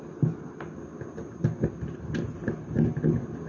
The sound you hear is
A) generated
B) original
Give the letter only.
B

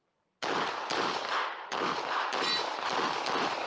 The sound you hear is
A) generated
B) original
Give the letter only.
B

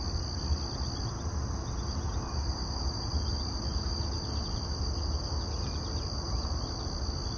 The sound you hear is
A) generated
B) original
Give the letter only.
B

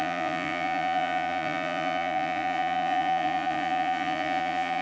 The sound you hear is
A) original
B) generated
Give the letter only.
B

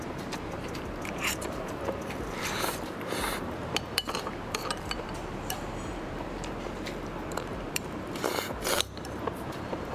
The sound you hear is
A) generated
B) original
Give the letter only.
A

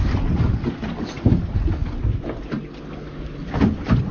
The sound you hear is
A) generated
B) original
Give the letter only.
B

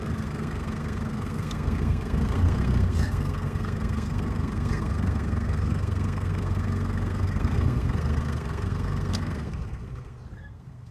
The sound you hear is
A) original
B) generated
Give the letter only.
B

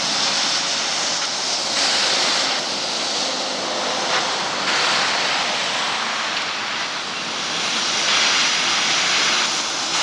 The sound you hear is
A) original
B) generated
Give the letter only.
A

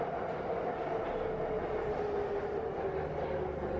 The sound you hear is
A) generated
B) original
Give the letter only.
B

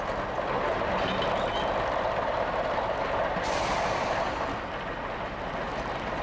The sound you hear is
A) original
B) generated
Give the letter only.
A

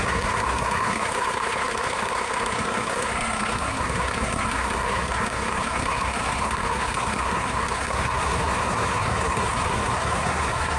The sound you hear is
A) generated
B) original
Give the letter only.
A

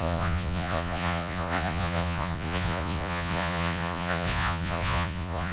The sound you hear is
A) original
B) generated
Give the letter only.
B